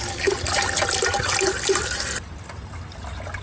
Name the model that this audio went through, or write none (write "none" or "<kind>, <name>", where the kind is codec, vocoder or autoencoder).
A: none